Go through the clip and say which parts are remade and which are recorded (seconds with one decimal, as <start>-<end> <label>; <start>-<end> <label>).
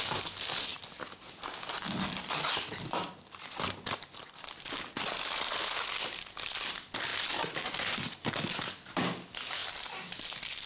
0.0-10.7 recorded